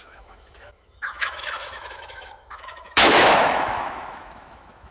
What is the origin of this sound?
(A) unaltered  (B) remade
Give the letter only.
B